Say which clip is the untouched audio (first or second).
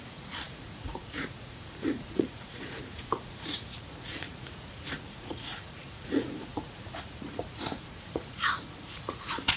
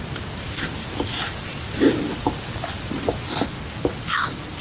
second